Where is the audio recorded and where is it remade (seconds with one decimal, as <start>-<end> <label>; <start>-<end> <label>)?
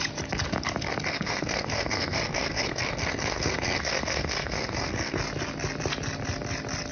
0.0-1.1 recorded; 1.1-5.2 remade; 5.2-6.9 recorded